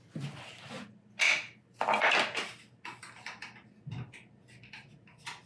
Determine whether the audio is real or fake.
real